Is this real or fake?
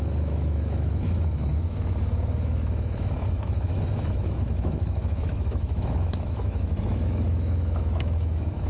fake